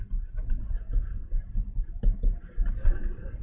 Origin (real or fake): real